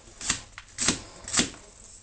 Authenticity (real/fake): real